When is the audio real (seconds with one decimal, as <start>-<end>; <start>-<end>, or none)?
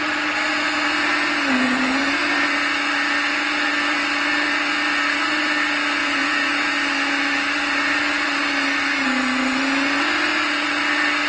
0.0-6.0; 6.7-11.3